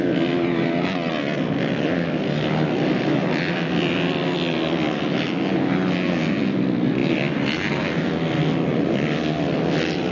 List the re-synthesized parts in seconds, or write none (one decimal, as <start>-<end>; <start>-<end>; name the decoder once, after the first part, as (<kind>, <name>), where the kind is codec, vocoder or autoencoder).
none